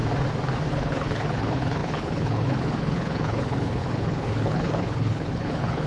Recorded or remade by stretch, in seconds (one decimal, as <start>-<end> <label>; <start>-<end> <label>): 0.0-0.7 recorded; 0.7-5.9 remade

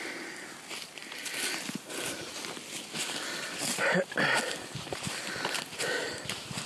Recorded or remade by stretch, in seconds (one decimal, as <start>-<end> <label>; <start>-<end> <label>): 0.0-6.7 recorded

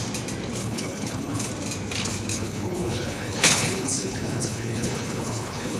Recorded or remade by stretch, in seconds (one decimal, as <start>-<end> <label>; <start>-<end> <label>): 0.0-0.6 recorded; 0.6-1.5 remade; 1.5-2.3 recorded; 2.3-5.8 remade

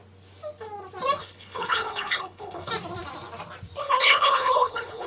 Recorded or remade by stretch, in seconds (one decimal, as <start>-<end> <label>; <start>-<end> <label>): 0.0-1.2 recorded; 1.2-2.7 remade; 2.7-3.8 recorded; 3.8-5.1 remade

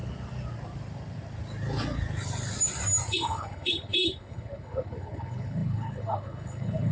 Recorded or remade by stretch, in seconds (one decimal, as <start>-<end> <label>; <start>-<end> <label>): 0.0-3.1 recorded; 3.1-6.9 remade

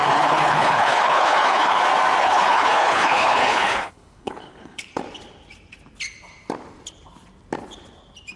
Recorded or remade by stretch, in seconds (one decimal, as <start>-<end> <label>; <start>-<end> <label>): 0.0-1.8 remade; 1.8-2.2 recorded; 2.2-5.0 remade; 5.0-8.4 recorded

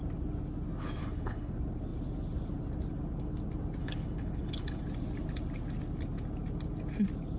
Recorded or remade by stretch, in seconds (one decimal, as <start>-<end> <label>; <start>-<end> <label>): 0.0-1.0 recorded; 1.0-1.5 remade; 1.5-3.8 recorded; 3.8-4.8 remade; 4.8-7.4 recorded

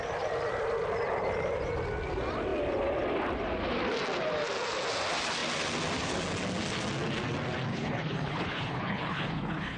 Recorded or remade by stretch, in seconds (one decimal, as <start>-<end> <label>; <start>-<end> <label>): 0.0-7.7 recorded; 7.7-9.8 remade